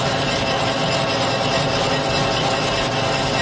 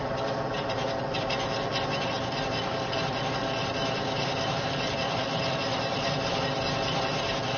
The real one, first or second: first